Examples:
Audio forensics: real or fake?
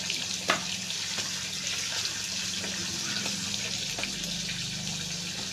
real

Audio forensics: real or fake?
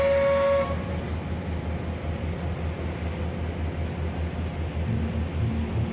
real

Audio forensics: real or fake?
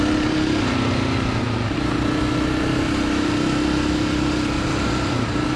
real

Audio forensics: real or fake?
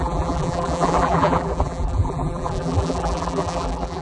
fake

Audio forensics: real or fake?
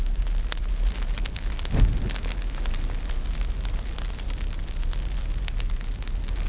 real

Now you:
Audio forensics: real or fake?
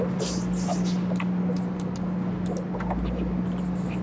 real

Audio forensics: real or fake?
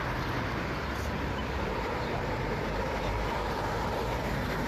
fake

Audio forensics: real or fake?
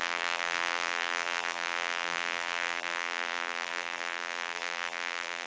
fake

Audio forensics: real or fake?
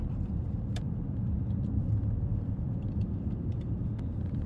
fake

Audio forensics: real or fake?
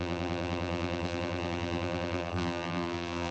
fake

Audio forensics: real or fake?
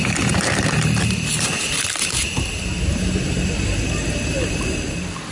fake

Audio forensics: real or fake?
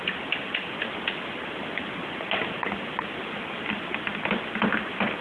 real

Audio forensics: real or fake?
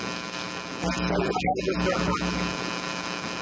real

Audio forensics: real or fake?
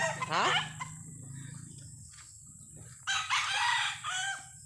real